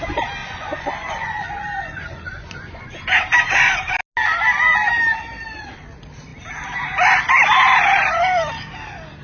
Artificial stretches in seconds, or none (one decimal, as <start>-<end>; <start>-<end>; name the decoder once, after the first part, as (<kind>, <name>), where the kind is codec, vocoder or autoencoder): 0.4-3.0 (vocoder, Vocos)